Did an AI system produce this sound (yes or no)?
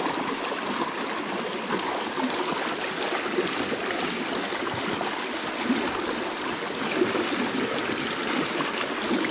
no